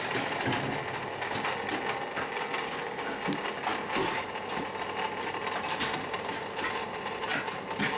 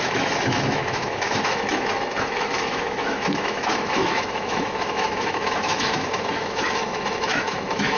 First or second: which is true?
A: first